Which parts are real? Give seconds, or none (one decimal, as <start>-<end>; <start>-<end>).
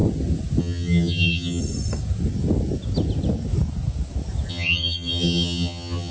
0.0-0.6; 1.6-4.5